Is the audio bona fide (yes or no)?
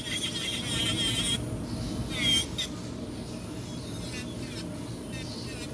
yes